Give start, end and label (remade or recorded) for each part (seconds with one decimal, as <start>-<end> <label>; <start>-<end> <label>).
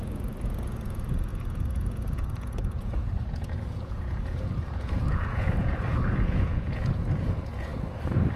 0.0-7.7 remade; 7.7-8.4 recorded